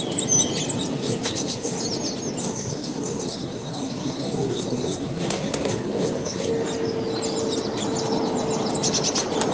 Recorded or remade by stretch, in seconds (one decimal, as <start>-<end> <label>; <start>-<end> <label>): 0.0-0.9 recorded; 0.9-1.8 remade; 1.8-2.4 recorded; 2.4-6.5 remade; 6.5-9.5 recorded